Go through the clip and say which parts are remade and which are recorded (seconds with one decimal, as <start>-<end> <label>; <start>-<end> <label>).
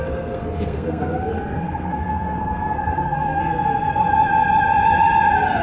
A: 0.0-3.4 remade; 3.4-5.6 recorded